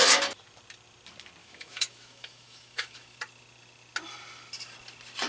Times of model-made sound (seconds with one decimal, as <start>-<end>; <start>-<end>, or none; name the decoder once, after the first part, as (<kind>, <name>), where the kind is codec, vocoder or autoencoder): 1.4-3.2 (autoencoder, DAC-VAE)